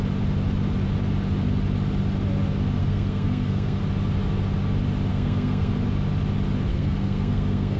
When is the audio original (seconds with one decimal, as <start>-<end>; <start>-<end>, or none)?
0.0-2.8; 3.8-5.1; 5.7-6.7